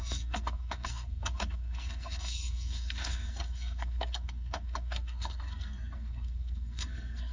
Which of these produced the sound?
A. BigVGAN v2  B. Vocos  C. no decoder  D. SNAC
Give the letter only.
D